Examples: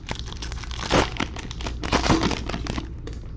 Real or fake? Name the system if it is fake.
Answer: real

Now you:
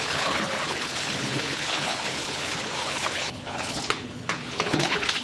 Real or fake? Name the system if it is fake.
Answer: fake, codec, HILCodec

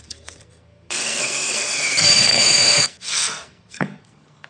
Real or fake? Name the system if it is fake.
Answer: fake, codec, SNAC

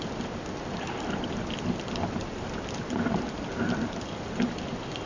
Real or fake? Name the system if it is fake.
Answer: real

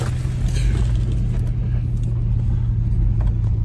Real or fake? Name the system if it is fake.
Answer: real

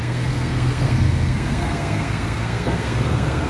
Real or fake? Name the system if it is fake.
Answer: fake, codec, SNAC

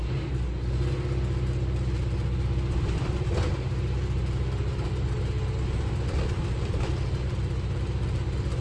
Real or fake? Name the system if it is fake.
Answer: real